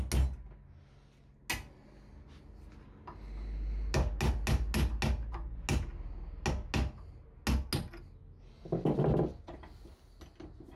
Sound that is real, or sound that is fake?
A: real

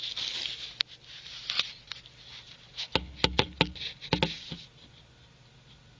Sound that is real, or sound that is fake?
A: real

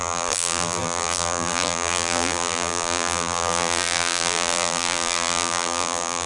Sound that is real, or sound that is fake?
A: fake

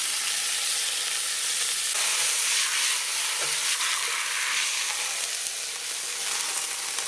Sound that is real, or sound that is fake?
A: real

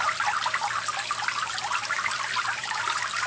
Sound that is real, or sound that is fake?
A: fake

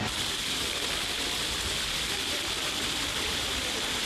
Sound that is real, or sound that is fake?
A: fake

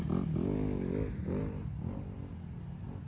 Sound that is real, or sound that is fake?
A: real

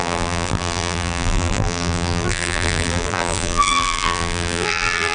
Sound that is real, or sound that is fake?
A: fake